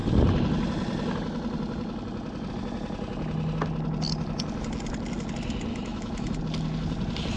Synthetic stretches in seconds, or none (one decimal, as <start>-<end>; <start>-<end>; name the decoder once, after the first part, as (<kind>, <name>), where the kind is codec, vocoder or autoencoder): 5.7-6.4 (autoencoder, DAC-VAE)